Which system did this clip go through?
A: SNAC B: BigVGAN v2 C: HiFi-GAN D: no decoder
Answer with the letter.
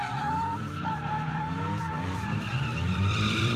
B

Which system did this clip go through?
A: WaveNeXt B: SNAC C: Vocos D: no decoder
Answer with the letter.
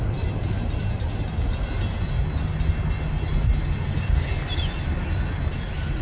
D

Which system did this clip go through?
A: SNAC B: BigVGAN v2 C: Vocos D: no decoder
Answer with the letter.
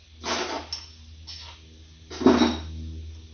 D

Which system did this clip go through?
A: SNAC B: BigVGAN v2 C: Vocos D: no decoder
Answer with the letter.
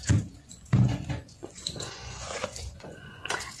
C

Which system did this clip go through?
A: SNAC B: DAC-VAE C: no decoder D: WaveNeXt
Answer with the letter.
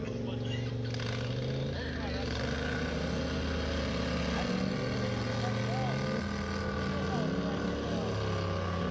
C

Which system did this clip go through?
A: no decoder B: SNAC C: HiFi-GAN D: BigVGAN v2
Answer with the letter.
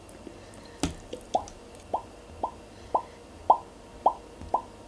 A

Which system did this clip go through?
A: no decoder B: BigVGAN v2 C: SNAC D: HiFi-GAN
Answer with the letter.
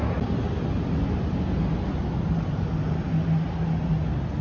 A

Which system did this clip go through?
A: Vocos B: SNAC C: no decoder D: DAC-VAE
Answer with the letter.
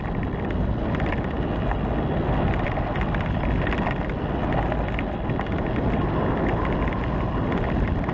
C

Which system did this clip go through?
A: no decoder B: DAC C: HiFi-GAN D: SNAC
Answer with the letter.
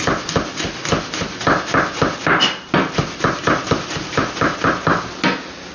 A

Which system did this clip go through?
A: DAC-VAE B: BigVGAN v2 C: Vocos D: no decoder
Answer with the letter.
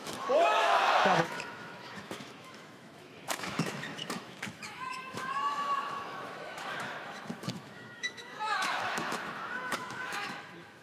A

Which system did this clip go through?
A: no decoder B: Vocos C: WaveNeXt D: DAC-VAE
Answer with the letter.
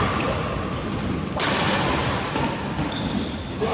A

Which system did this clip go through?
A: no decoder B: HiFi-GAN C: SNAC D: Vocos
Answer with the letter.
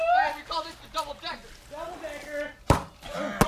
A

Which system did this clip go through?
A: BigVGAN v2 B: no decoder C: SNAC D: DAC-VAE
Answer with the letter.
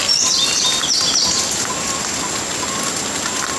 B